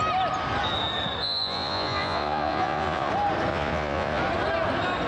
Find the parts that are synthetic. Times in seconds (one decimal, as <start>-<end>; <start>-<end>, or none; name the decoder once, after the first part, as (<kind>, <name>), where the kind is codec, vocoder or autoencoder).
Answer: 1.2-3.1 (vocoder, Vocos); 3.5-4.2